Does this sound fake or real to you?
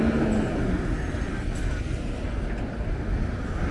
real